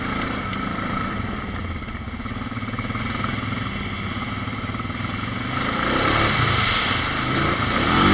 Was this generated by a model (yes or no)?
no